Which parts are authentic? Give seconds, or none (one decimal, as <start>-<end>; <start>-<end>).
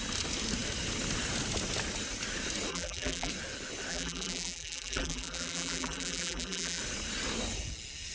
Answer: 0.0-2.7; 3.3-3.9; 6.8-8.1